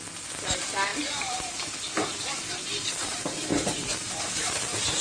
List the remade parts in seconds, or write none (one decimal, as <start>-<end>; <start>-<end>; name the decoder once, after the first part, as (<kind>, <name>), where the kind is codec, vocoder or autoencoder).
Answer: 0.9-1.7 (vocoder, BigVGAN v2); 3.5-5.0